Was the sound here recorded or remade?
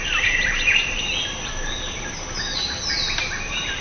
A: recorded